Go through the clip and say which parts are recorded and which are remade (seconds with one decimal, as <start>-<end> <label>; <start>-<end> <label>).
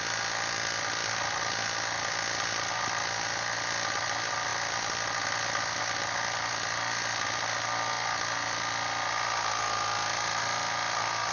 0.0-11.3 recorded